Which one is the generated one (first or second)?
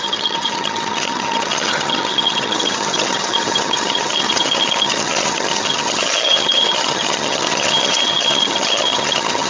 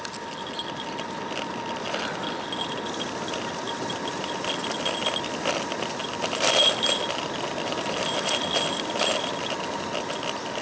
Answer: first